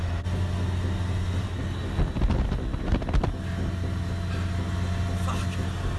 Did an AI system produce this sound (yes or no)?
no